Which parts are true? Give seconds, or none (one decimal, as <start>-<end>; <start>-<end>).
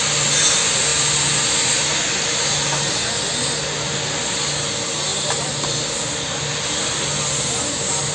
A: 0.0-8.1